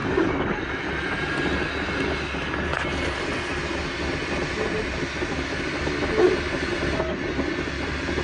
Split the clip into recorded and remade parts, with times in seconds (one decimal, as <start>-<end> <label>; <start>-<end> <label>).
0.0-8.2 recorded